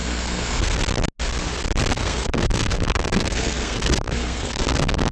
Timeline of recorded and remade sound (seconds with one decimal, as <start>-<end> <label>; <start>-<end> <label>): 0.0-0.8 remade; 0.8-1.9 recorded; 1.9-5.1 remade